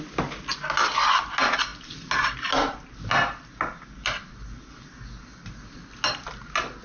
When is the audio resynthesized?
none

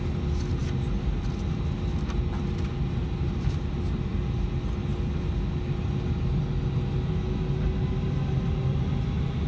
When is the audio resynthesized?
none

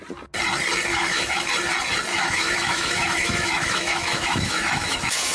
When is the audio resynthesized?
0.9-1.5 (autoencoder, DAC-VAE); 2.1-5.3

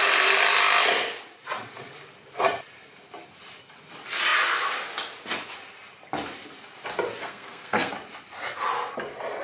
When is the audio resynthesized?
7.2-7.9 (codec, SNAC)

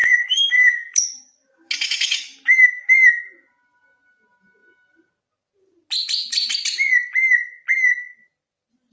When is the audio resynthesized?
0.0-2.9 (codec, DAC)

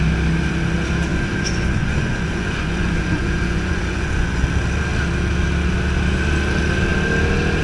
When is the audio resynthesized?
1.1-4.4 (vocoder, Vocos)

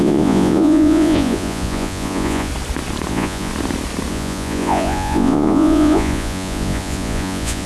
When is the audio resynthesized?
0.0-2.5 (vocoder, Vocos); 3.1-3.5; 4.1-7.7